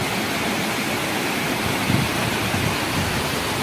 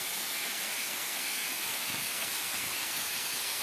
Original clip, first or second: first